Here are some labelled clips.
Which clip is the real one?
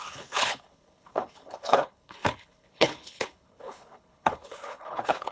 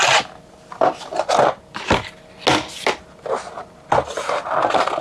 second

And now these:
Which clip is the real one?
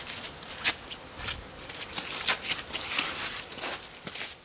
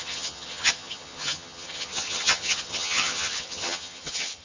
first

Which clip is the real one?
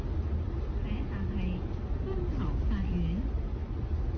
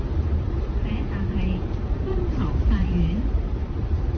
first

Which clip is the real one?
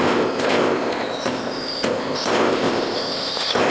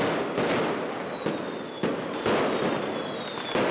second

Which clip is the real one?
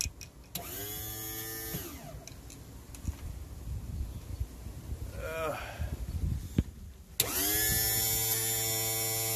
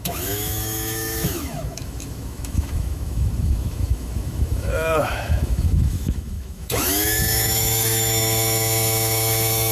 first